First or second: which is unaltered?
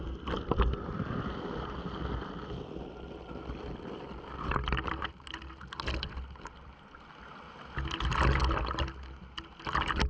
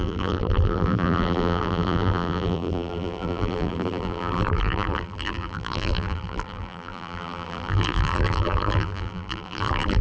first